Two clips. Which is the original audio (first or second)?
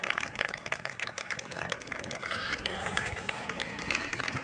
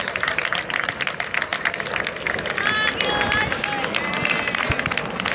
second